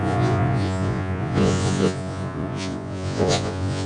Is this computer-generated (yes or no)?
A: yes